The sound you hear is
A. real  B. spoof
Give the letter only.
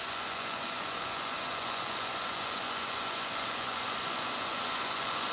B